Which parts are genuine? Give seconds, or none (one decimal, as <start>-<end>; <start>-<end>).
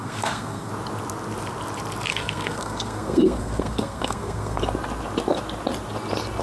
0.7-2.1; 4.6-6.4